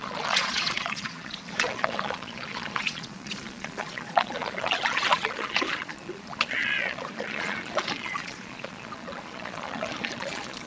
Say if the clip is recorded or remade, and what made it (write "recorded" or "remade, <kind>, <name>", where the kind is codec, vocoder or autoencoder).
remade, vocoder, Vocos